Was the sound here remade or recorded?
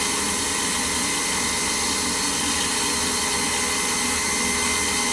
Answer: recorded